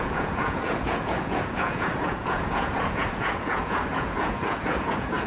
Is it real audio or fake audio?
fake